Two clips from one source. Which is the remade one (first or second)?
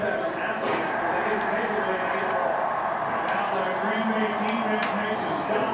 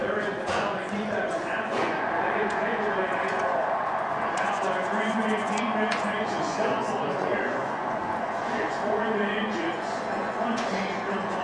second